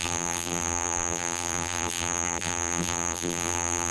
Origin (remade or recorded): remade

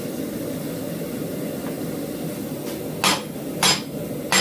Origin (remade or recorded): recorded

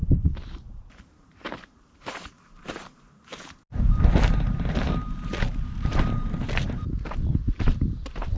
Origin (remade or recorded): remade